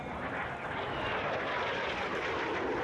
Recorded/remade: recorded